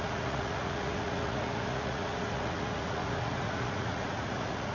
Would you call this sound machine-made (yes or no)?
yes